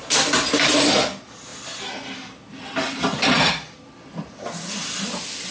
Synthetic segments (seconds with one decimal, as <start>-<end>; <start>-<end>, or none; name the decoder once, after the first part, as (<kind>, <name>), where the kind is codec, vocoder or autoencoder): 1.5-4.3 (vocoder, BigVGAN v2)